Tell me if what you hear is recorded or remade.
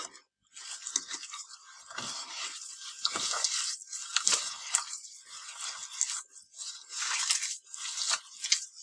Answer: recorded